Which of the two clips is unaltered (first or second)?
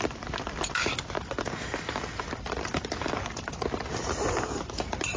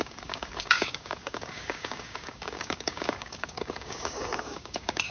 first